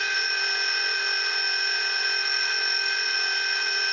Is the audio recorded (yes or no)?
yes